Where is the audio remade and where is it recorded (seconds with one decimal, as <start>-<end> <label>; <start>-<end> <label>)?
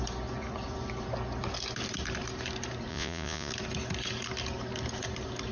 0.0-2.9 recorded; 2.9-3.5 remade; 3.5-5.5 recorded